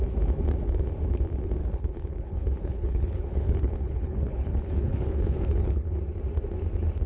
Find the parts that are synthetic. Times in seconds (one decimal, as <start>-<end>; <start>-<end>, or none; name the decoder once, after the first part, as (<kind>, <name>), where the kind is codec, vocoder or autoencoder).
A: 1.6-5.9 (codec, HILCodec)